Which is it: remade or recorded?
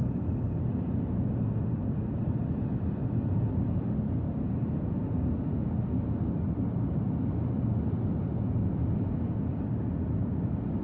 recorded